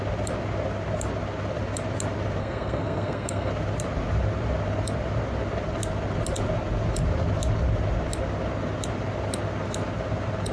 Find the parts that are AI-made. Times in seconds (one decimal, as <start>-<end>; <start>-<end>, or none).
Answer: 2.4-3.5